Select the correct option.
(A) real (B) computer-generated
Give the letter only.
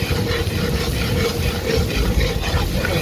A